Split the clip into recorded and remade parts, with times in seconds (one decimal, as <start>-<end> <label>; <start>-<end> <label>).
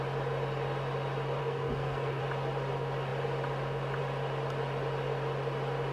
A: 0.0-1.4 recorded; 1.4-2.2 remade; 2.2-5.9 recorded